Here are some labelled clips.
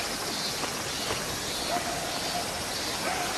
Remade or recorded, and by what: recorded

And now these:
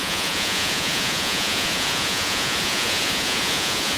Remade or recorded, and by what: remade, vocoder, Vocos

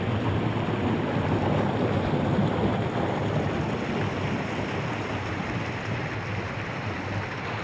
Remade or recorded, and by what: recorded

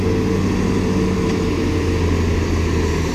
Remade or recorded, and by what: recorded